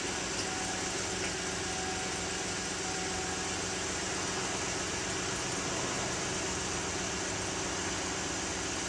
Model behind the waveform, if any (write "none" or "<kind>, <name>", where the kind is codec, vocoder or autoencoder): none